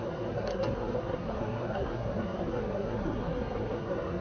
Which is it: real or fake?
fake